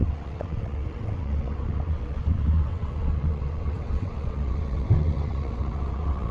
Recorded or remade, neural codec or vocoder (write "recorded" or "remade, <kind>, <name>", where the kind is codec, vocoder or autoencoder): remade, vocoder, WaveNeXt